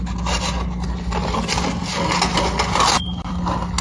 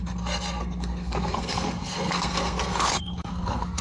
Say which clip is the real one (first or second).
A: first